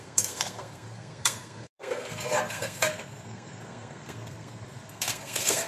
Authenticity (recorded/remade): remade